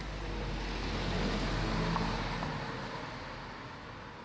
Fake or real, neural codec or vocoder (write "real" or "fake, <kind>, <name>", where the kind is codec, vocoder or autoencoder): real